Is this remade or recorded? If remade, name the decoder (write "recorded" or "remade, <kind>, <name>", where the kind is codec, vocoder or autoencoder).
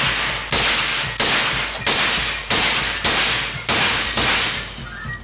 recorded